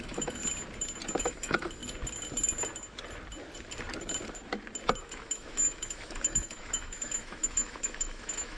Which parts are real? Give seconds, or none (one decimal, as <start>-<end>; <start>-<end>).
0.4-1.2; 1.8-5.0